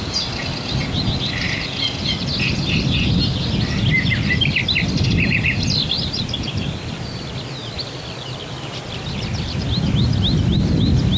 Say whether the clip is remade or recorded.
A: recorded